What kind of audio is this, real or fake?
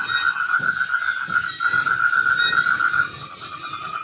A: real